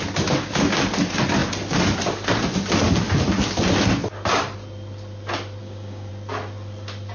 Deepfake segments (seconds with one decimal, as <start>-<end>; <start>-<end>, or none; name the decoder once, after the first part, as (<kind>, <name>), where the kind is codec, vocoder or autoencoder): 5.6-6.1 (codec, DAC)